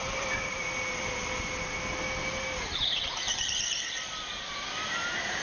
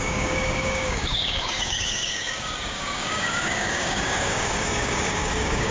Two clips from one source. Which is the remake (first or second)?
second